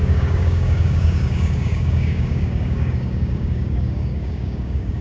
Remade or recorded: remade